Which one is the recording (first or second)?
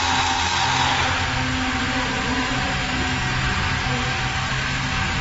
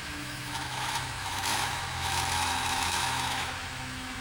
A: first